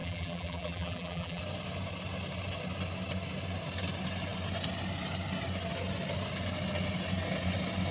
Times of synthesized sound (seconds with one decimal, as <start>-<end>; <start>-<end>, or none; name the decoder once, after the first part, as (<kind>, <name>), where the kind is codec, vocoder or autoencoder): 0.0-1.4 (vocoder, BigVGAN v2)